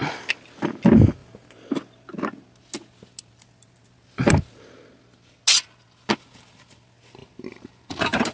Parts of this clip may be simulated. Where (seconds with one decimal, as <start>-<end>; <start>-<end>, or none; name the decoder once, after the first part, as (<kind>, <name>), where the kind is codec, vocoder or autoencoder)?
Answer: 7.2-8.3 (vocoder, BigVGAN v2)

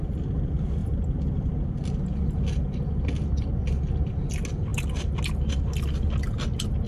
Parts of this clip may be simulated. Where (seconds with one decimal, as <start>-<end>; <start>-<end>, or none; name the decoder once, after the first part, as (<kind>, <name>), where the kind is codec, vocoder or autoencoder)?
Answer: 0.8-1.5 (vocoder, BigVGAN v2)

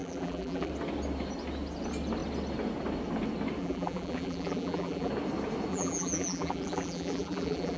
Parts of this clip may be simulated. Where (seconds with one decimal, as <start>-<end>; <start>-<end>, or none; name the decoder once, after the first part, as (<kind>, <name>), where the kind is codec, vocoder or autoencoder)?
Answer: 0.0-0.7 (vocoder, BigVGAN v2); 3.6-5.1; 5.7-7.8

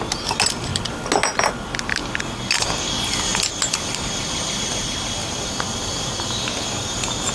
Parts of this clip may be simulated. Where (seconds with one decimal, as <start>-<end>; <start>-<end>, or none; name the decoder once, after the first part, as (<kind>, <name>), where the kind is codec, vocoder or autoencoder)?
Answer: 5.2-6.1 (vocoder, BigVGAN v2)

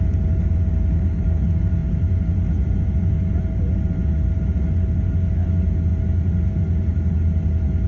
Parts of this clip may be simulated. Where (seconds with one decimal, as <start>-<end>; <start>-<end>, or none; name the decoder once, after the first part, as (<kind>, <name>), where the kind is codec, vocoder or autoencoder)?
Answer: none

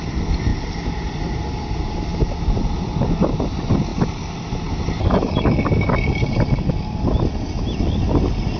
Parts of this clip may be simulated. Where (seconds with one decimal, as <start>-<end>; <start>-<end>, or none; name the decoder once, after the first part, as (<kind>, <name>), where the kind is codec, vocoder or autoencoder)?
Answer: 0.5-1.4 (vocoder, BigVGAN v2)

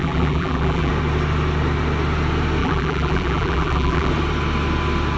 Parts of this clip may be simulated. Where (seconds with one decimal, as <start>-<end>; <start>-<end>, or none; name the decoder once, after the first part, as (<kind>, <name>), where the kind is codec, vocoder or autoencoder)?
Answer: 0.0-0.9 (vocoder, BigVGAN v2); 2.6-4.1

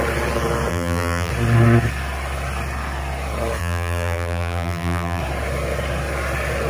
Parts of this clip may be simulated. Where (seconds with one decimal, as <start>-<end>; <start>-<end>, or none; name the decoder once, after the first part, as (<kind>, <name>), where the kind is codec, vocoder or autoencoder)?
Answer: 0.7-1.3 (vocoder, BigVGAN v2); 3.6-5.2